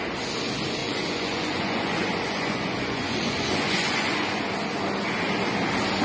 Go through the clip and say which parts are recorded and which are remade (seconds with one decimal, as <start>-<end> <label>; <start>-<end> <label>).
0.0-0.8 recorded; 0.8-4.4 remade; 4.4-6.0 recorded